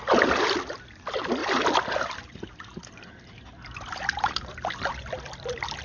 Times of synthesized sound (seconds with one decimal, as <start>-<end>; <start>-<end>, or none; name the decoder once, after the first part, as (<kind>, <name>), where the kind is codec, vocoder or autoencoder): 1.4-4.9 (vocoder, BigVGAN v2)